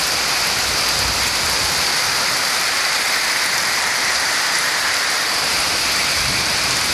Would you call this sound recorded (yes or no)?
yes